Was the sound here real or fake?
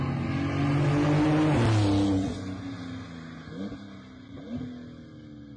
real